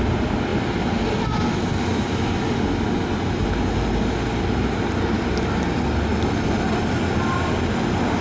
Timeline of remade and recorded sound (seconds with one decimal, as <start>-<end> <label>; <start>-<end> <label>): 0.0-8.2 recorded